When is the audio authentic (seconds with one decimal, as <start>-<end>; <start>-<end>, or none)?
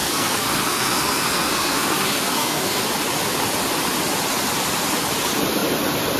2.8-6.2